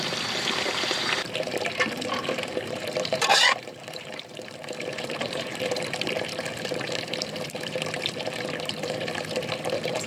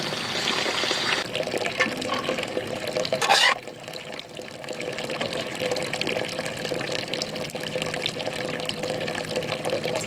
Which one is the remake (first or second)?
first